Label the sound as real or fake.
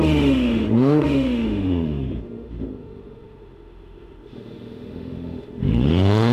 fake